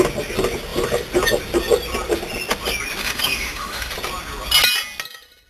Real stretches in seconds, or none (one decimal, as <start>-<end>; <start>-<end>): 0.0-3.0; 3.9-5.5